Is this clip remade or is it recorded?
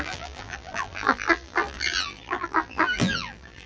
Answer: remade